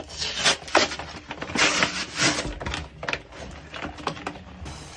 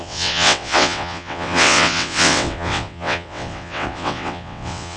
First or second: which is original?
first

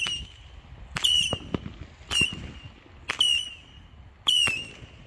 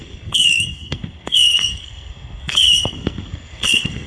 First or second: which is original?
first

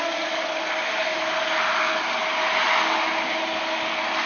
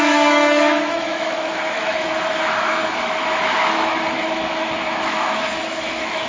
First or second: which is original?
first